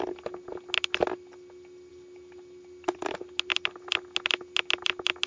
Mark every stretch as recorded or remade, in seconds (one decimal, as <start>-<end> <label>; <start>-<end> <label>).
0.0-5.3 recorded